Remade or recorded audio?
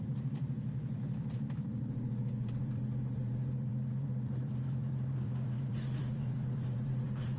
remade